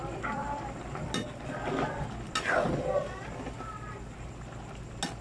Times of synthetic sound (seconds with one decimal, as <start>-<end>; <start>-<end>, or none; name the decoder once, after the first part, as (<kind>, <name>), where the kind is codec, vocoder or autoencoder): none